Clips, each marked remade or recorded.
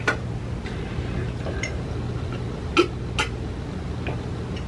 recorded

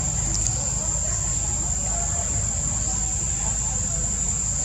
recorded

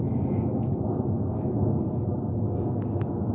recorded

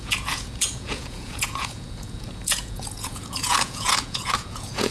remade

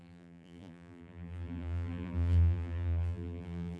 remade